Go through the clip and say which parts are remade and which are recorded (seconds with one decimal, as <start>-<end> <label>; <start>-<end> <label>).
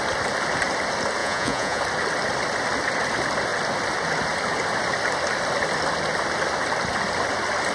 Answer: 0.0-1.2 recorded; 1.2-1.8 remade; 1.8-7.7 recorded